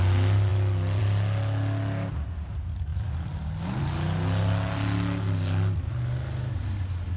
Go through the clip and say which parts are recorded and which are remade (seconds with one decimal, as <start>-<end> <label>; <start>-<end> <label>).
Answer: 0.0-7.2 recorded